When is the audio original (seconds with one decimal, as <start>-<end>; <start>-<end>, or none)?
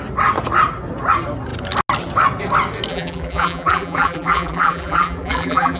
0.0-2.9